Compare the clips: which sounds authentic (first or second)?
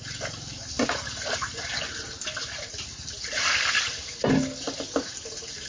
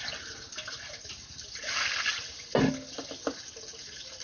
second